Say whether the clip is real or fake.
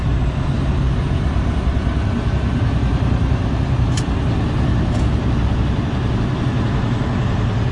fake